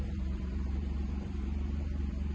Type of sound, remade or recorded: remade